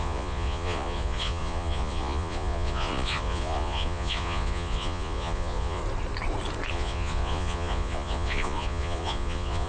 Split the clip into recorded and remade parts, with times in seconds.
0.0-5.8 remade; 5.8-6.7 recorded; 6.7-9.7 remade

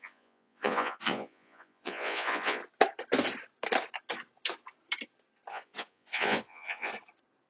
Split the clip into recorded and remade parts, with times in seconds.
0.0-2.6 remade; 2.6-5.5 recorded; 5.5-6.9 remade; 6.9-7.5 recorded